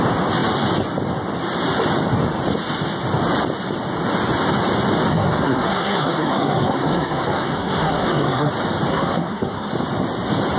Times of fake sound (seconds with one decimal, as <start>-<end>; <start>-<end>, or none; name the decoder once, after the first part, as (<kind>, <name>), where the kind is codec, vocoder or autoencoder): 5.1-8.5 (codec, SNAC); 8.9-9.7